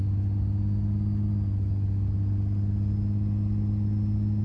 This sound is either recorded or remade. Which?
recorded